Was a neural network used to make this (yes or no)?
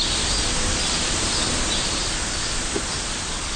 no